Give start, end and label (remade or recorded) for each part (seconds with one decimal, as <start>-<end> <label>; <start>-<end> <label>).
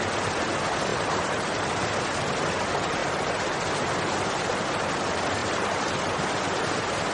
0.0-0.9 recorded; 0.9-1.7 remade; 1.7-3.0 recorded; 3.0-3.8 remade; 3.8-5.4 recorded; 5.4-7.1 remade